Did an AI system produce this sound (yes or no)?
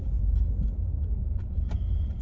no